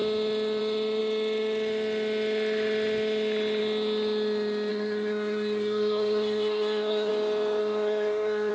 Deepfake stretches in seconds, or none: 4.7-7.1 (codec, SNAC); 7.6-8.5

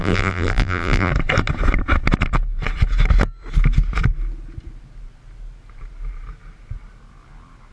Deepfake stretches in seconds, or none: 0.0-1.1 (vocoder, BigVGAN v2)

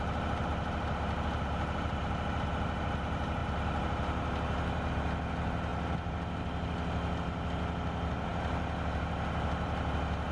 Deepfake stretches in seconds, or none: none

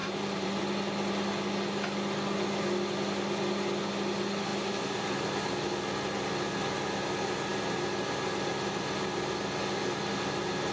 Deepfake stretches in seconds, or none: 0.0-0.6 (vocoder, BigVGAN v2)

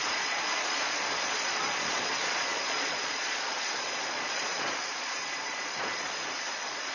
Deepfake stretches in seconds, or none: 0.0-6.9 (vocoder, Vocos)

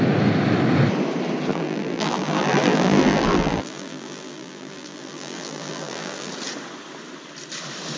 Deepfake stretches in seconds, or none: 1.5-6.3 (vocoder, BigVGAN v2)

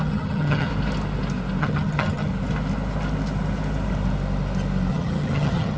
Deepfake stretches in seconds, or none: 0.0-0.7 (vocoder, HiFi-GAN); 1.6-2.3; 4.9-5.8

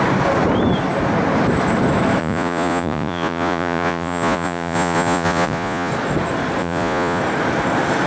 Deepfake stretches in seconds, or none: 2.2-5.9 (vocoder, Vocos); 6.6-7.2